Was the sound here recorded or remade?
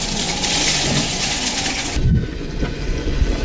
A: remade